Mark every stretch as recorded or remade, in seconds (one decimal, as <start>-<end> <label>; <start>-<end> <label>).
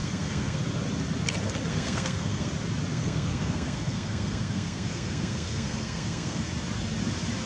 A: 0.0-0.6 remade; 0.6-1.7 recorded; 1.7-2.5 remade; 2.5-2.9 recorded; 2.9-6.5 remade; 6.5-7.5 recorded